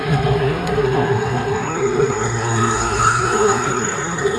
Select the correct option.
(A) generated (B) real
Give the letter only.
A